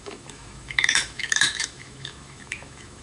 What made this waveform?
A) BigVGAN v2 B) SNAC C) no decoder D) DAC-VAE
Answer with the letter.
D